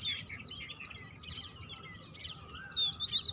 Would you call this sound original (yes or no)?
yes